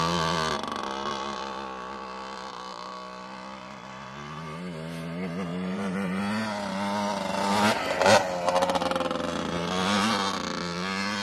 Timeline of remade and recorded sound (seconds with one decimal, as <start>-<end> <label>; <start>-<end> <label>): 0.0-5.5 recorded; 5.5-6.2 remade; 6.2-11.2 recorded